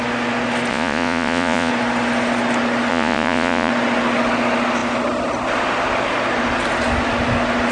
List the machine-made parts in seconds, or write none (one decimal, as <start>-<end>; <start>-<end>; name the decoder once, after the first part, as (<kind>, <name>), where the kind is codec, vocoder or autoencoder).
0.7-1.7 (vocoder, Vocos); 2.9-3.7